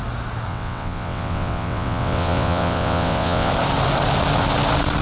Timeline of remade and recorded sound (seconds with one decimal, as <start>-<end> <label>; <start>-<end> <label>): 0.0-0.5 recorded; 0.5-3.5 remade; 3.5-5.0 recorded